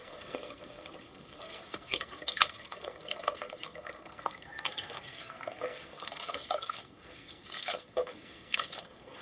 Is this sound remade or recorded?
remade